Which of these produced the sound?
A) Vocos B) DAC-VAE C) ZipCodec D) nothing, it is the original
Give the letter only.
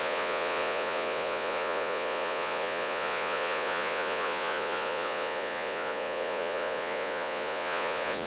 A